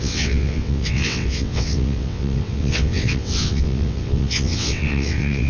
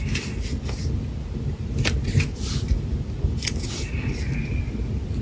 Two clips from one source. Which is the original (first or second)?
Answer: second